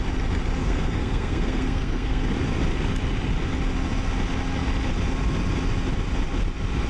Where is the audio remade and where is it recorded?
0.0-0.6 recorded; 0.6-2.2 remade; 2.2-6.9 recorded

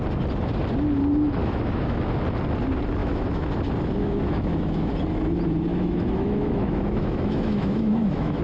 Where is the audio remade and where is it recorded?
0.0-1.4 recorded; 1.4-2.0 remade; 2.0-3.0 recorded; 3.0-3.5 remade; 3.5-4.0 recorded; 4.0-4.9 remade; 4.9-5.7 recorded; 5.7-8.4 remade

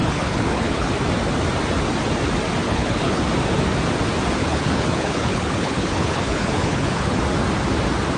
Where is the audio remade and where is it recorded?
0.0-0.9 remade; 0.9-2.6 recorded; 2.6-3.2 remade; 3.2-4.4 recorded; 4.4-7.2 remade; 7.2-8.2 recorded

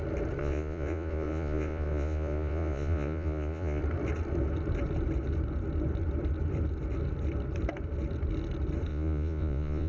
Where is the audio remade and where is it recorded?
0.0-0.4 recorded; 0.4-3.8 remade; 3.8-8.9 recorded; 8.9-9.9 remade

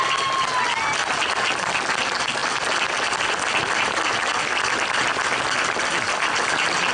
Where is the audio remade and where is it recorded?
0.0-2.4 recorded; 2.4-3.2 remade; 3.2-6.9 recorded

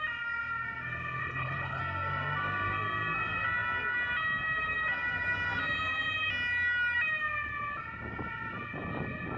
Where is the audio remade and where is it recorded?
0.0-1.2 recorded; 1.2-1.8 remade; 1.8-9.4 recorded

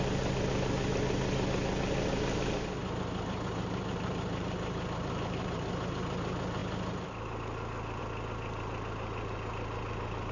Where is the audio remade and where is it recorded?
0.0-2.8 recorded; 2.8-5.6 remade; 5.6-10.3 recorded